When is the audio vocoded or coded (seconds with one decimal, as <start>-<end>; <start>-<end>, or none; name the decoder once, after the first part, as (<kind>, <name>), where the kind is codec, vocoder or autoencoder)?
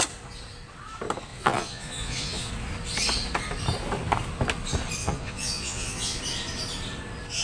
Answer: 1.3-2.5 (vocoder, Vocos); 5.0-6.2